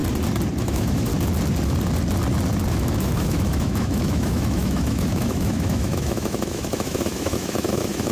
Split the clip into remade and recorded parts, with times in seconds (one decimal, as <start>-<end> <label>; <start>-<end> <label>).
0.0-0.6 recorded; 0.6-1.1 remade; 1.1-2.7 recorded; 2.7-8.1 remade